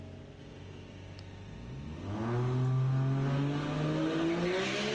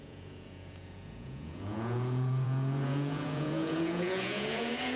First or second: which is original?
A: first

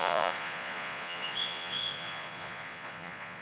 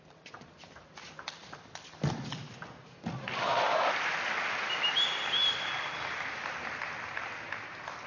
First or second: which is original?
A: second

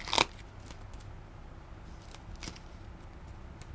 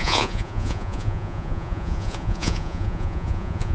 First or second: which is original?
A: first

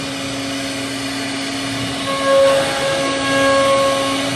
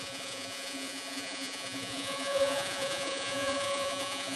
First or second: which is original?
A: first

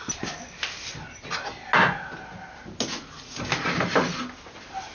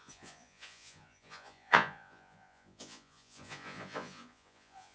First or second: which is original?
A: first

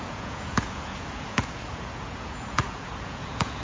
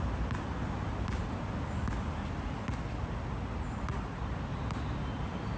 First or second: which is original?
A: second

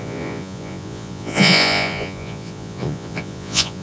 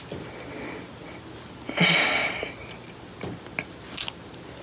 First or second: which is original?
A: second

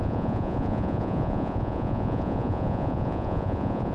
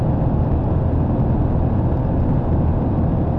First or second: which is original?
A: second